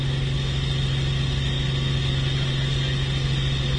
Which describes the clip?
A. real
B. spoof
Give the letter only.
A